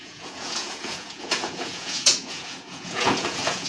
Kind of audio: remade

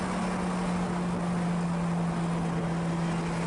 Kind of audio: recorded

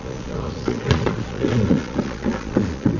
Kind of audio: remade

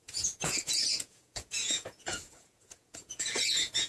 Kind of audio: remade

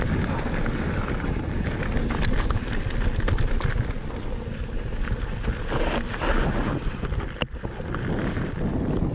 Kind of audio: recorded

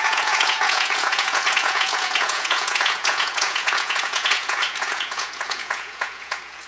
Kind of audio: remade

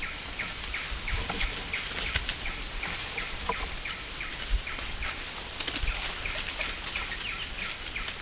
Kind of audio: recorded